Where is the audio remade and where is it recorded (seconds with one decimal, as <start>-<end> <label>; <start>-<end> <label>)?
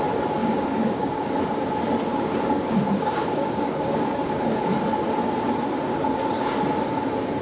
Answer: 0.0-0.4 recorded; 0.4-1.2 remade; 1.2-2.1 recorded; 2.1-4.7 remade; 4.7-7.4 recorded